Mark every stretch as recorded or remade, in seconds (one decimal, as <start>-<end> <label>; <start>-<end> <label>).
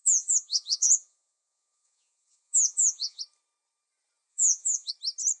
0.0-3.2 remade; 3.2-4.3 recorded; 4.3-4.9 remade; 4.9-5.4 recorded